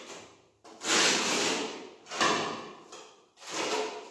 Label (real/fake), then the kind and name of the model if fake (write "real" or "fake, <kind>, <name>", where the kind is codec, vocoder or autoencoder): real